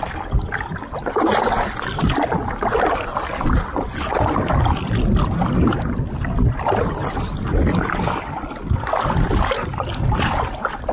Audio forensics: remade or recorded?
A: recorded